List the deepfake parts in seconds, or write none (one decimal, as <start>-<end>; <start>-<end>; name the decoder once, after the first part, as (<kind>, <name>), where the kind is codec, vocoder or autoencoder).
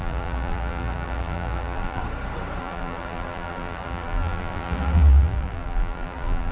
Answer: 0.0-2.0 (vocoder, BigVGAN v2); 2.6-6.5